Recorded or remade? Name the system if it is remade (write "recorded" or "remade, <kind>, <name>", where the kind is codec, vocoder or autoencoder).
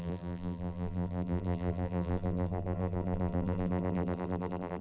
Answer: remade, vocoder, BigVGAN v2